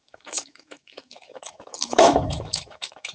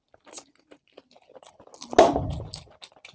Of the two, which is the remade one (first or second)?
first